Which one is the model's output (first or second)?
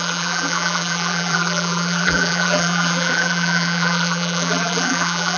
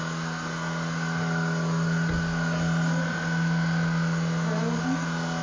first